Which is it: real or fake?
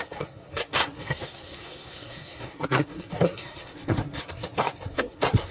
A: fake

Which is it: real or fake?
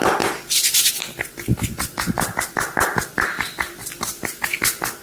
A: real